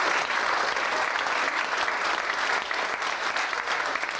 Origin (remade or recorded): recorded